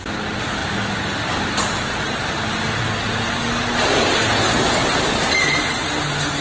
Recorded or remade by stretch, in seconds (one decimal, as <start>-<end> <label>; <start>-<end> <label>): 0.0-6.4 recorded